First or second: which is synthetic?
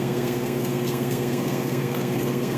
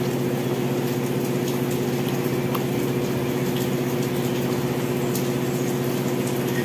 first